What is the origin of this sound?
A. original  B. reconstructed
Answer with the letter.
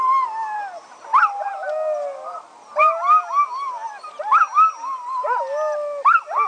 A